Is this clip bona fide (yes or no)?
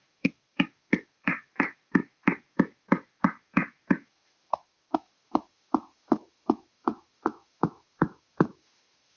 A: no